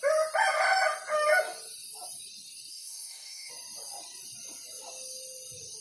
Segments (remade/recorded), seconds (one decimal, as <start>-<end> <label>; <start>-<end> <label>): 0.0-2.7 recorded; 2.7-3.5 remade; 3.5-5.8 recorded